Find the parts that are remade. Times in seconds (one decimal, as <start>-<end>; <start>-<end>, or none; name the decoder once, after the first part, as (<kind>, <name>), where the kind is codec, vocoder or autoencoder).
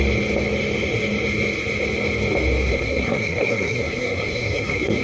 2.7-5.0 (codec, SNAC)